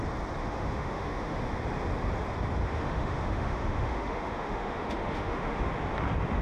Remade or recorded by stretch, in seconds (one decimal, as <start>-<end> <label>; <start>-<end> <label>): 0.0-0.4 recorded; 0.4-1.4 remade; 1.4-2.6 recorded; 2.6-5.7 remade; 5.7-6.4 recorded